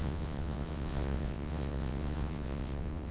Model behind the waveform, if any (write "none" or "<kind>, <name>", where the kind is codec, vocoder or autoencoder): vocoder, WaveNeXt